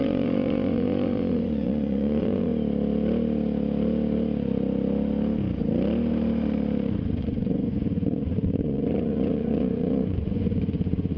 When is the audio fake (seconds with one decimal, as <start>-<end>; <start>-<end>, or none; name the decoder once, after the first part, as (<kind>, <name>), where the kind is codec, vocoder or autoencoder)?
0.0-2.5 (vocoder, Vocos); 7.2-11.2